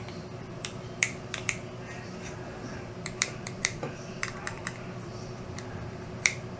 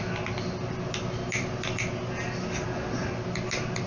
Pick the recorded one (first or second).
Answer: second